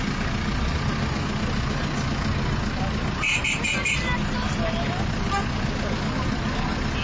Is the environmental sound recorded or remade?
recorded